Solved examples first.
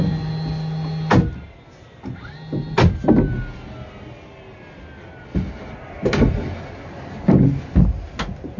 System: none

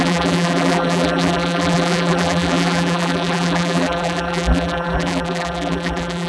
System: vocoder, BigVGAN v2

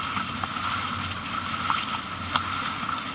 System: none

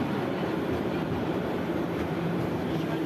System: vocoder, BigVGAN v2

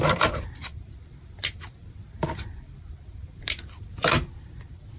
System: vocoder, BigVGAN v2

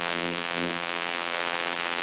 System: vocoder, BigVGAN v2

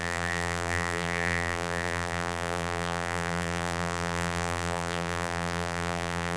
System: vocoder, BigVGAN v2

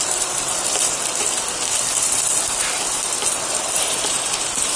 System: vocoder, BigVGAN v2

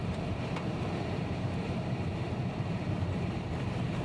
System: vocoder, BigVGAN v2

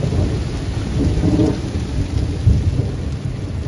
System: none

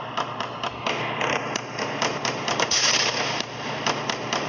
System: vocoder, BigVGAN v2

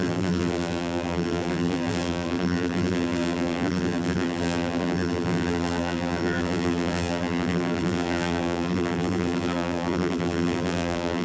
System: vocoder, BigVGAN v2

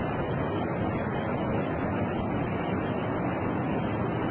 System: none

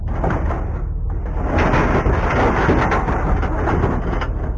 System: none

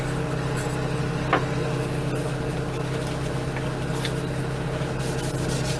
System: none